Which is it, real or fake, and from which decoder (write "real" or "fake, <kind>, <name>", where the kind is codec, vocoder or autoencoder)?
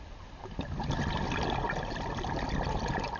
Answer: real